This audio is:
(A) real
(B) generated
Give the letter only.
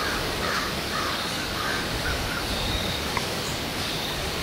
B